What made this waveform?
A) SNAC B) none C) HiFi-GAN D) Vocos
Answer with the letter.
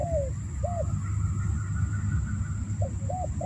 B